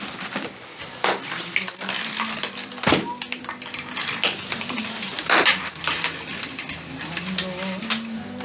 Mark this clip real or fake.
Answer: real